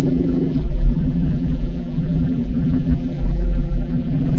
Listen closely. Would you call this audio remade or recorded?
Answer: remade